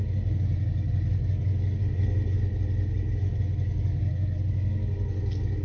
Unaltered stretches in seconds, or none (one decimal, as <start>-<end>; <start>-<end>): 0.0-5.6